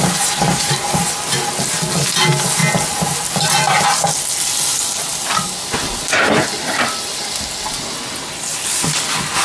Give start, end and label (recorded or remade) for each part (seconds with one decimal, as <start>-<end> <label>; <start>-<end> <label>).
0.0-9.4 recorded